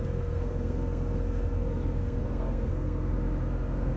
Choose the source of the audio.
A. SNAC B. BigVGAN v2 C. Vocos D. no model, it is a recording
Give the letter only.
A